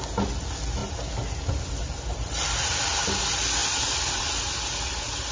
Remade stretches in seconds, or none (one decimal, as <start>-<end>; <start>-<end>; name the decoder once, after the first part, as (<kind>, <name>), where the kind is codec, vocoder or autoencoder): 0.0-0.8 (vocoder, BigVGAN v2); 1.5-5.3